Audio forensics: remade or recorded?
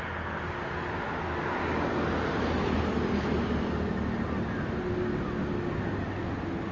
recorded